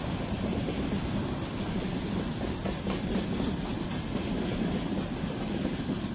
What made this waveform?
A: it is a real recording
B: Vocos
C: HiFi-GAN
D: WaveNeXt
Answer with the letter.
A